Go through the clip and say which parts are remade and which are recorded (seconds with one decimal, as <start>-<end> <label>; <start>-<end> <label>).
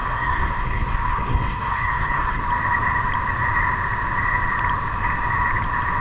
0.0-2.4 remade; 2.4-6.0 recorded